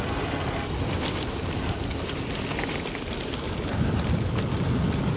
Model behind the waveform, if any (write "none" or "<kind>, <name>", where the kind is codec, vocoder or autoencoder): none